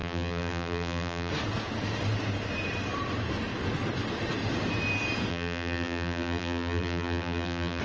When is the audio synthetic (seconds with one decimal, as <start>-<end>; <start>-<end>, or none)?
0.0-1.3; 5.3-7.8